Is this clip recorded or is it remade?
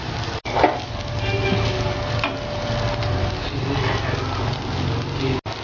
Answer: recorded